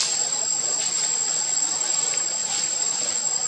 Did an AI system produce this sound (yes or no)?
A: no